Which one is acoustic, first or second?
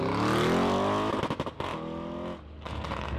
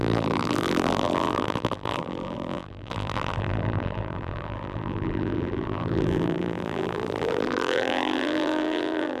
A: first